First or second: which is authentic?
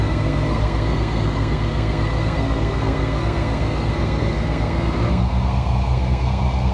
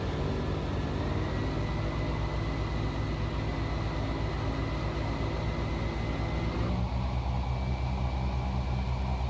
second